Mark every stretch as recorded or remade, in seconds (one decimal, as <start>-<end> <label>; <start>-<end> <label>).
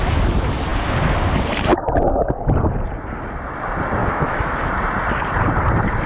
0.0-4.0 recorded; 4.0-4.7 remade; 4.7-6.1 recorded